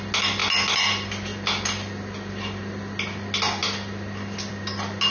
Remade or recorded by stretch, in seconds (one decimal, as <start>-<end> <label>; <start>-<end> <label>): 0.0-5.1 recorded